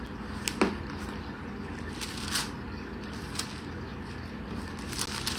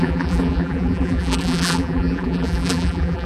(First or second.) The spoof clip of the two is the second